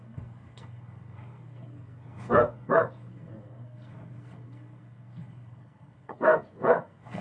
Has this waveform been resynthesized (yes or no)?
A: yes